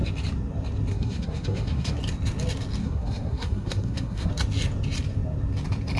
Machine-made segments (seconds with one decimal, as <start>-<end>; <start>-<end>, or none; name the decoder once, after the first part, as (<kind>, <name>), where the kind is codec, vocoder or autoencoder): 0.9-2.0 (codec, SNAC); 2.8-4.3